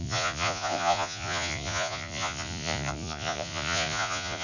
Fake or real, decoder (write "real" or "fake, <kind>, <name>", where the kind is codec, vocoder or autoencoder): fake, vocoder, Vocos